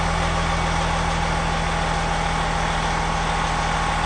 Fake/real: real